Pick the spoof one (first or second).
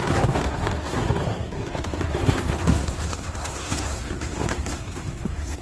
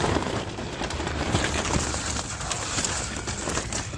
first